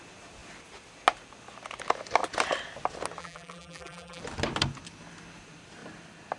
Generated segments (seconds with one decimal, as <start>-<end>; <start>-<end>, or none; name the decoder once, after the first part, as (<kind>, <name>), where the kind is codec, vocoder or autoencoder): 3.2-4.2 (vocoder, BigVGAN v2)